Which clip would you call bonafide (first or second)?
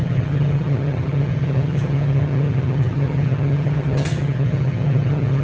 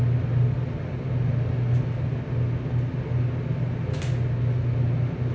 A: second